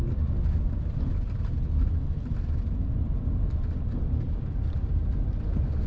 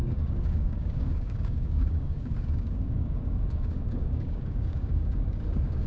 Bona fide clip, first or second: first